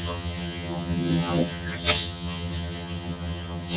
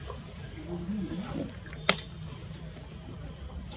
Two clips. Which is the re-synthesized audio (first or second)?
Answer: first